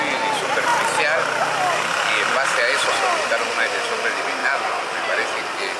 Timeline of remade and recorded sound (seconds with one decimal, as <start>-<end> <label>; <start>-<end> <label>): 0.0-5.8 recorded